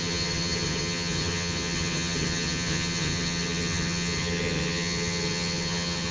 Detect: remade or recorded remade